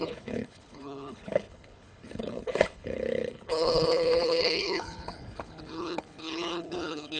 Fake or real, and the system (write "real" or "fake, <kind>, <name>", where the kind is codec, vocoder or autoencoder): fake, codec, HILCodec